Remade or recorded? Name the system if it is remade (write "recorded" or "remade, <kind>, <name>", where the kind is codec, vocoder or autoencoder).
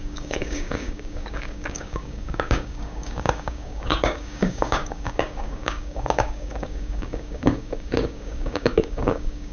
remade, codec, DAC